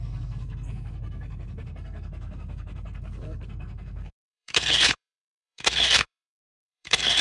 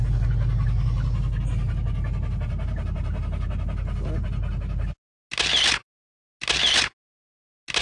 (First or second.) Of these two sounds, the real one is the second